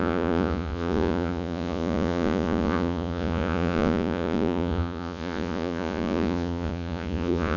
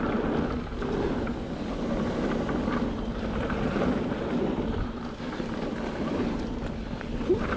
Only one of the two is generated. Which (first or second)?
first